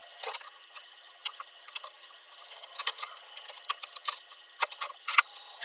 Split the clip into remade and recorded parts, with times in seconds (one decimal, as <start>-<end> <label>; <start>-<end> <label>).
0.0-5.6 remade